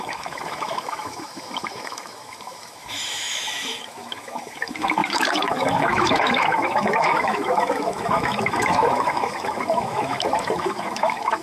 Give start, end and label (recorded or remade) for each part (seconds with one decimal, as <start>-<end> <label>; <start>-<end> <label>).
0.0-11.4 remade